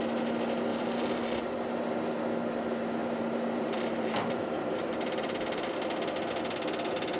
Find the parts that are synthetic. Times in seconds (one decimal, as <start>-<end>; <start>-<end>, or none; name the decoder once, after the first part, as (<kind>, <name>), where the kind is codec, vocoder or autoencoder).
0.7-1.7 (vocoder, BigVGAN v2); 3.0-5.7